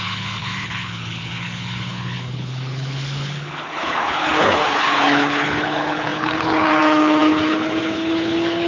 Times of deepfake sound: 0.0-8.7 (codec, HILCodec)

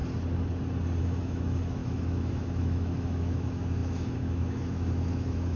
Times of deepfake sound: 1.0-5.6 (autoencoder, DAC-VAE)

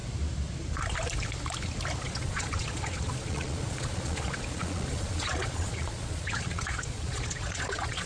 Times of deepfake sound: 2.0-8.1 (vocoder, Vocos)

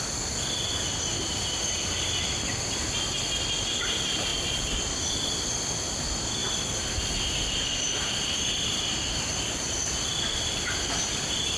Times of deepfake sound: none

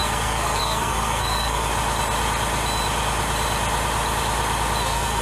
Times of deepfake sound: 0.0-1.7 (codec, SNAC); 4.8-5.2

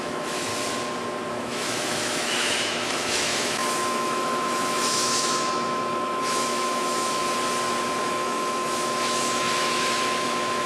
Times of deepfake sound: 0.0-0.5 (autoencoder, DAC-VAE); 1.3-7.2; 8.0-10.7